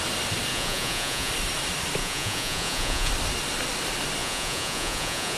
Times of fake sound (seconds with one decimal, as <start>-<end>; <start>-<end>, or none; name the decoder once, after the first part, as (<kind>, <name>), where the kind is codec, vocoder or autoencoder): 0.5-1.3 (vocoder, Vocos); 2.0-3.1; 4.2-5.4